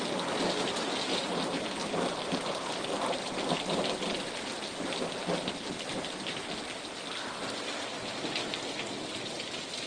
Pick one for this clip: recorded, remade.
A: recorded